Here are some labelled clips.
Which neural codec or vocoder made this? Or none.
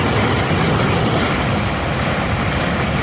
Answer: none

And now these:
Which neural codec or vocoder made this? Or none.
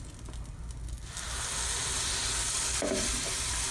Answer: none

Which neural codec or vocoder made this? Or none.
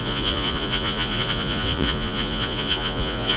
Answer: vocoder, Vocos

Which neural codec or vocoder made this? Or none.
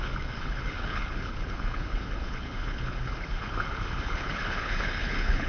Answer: codec, HILCodec